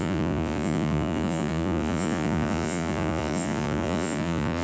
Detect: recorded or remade remade